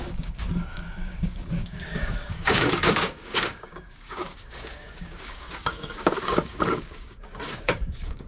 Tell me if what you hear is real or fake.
fake